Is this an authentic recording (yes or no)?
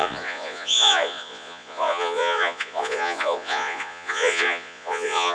no